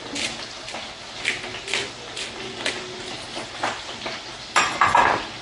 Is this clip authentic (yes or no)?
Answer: yes